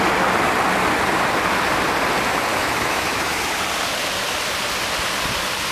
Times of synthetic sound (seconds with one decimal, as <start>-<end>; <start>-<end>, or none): 2.5-3.4